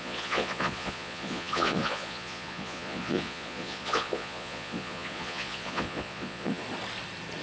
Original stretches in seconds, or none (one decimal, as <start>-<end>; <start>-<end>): 6.6-7.4

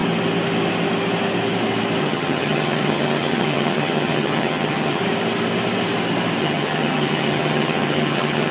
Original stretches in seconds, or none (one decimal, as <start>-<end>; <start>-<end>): 0.0-2.0; 5.0-6.4

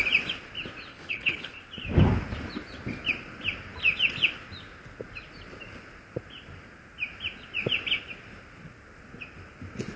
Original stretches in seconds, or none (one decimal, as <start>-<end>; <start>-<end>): 0.0-0.9; 1.6-10.0

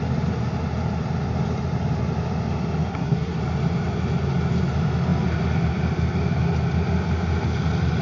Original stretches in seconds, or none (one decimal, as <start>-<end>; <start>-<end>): 0.0-2.9; 3.4-8.0

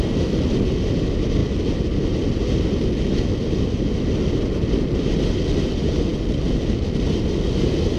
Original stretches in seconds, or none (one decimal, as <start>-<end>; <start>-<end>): 0.0-8.0